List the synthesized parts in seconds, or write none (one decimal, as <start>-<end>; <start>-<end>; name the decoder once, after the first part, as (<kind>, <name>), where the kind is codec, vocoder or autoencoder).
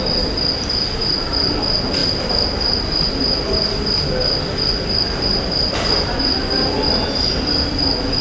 none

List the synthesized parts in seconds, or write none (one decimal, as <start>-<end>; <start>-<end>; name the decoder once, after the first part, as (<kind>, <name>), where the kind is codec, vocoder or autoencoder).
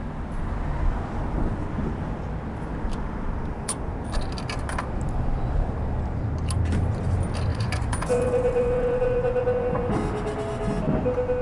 7.5-9.9 (vocoder, Vocos)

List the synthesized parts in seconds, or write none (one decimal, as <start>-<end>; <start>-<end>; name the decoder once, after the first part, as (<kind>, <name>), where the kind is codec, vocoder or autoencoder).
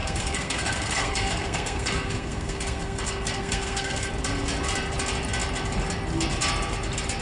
0.0-4.1 (codec, SNAC)